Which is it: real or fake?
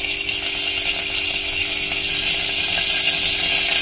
real